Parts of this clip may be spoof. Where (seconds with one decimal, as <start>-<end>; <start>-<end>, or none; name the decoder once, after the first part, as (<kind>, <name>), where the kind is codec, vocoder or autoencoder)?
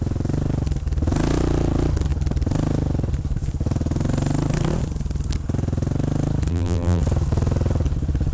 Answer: 6.5-7.0 (vocoder, BigVGAN v2)